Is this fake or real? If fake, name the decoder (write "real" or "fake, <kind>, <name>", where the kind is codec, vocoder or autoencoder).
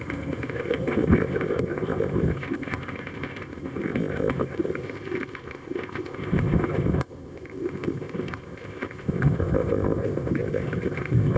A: fake, codec, ZipCodec